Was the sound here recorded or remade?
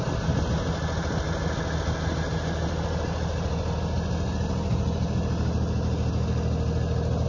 recorded